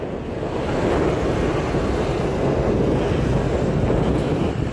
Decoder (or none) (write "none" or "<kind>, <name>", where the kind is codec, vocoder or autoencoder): none